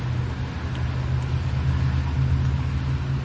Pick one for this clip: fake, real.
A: real